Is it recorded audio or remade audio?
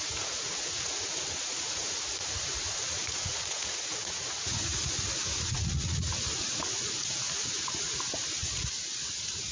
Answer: remade